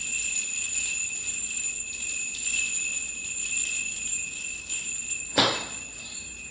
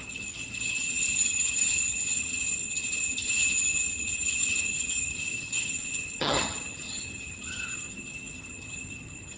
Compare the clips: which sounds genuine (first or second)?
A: first